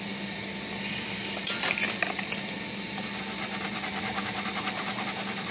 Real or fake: real